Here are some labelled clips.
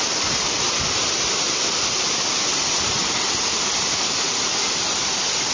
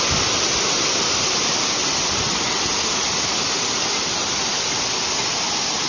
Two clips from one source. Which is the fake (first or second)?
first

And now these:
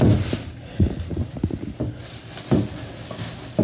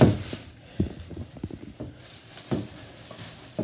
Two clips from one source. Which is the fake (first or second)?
second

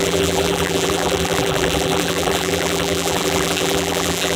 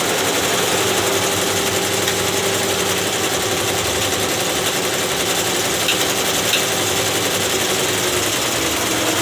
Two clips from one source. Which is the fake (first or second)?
first